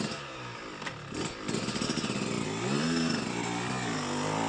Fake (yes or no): no